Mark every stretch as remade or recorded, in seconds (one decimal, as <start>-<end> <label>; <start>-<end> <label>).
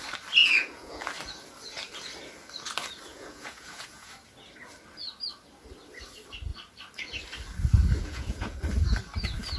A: 0.0-0.4 recorded; 0.4-1.0 remade; 1.0-3.1 recorded; 3.1-4.1 remade; 4.1-8.0 recorded; 8.0-8.6 remade; 8.6-9.6 recorded